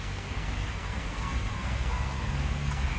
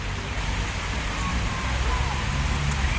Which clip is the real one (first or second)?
second